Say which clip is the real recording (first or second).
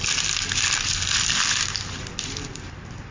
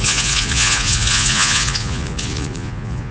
first